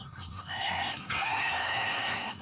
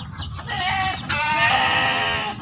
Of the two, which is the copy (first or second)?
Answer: first